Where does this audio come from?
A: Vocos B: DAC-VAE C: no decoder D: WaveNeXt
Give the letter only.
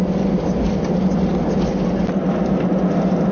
C